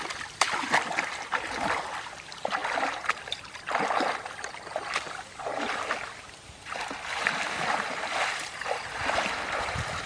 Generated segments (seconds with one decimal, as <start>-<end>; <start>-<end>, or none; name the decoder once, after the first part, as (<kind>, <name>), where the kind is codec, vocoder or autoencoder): none